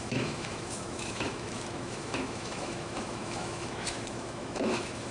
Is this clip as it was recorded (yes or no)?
no